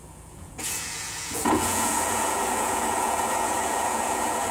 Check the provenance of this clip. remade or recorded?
remade